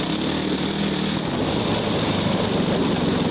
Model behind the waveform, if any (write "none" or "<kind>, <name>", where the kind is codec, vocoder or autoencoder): none